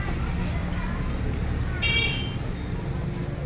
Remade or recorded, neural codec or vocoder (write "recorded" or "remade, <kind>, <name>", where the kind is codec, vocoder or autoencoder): recorded